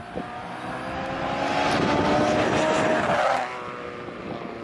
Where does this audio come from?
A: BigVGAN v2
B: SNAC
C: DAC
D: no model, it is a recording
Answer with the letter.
D